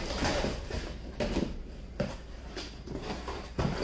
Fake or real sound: fake